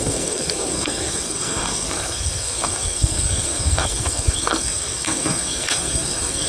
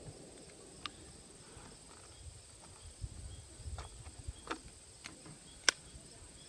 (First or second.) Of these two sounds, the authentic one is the second